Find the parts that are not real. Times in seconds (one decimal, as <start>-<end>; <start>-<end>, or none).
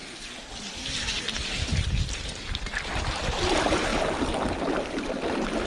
3.4-5.7